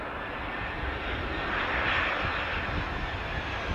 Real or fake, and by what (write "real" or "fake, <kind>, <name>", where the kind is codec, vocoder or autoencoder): real